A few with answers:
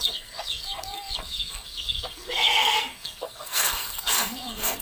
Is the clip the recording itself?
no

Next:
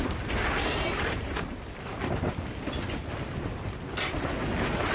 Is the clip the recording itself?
yes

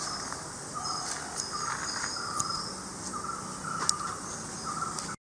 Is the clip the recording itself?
yes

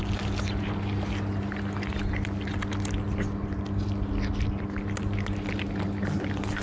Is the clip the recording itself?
yes